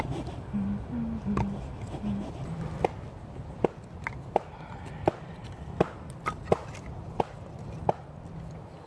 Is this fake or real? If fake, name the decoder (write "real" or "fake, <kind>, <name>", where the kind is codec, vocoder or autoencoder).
real